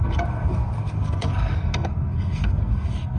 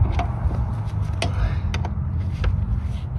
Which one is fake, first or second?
first